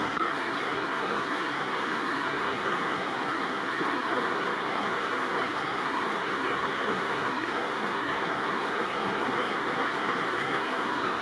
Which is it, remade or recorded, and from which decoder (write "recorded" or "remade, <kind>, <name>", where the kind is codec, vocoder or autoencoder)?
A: remade, codec, SNAC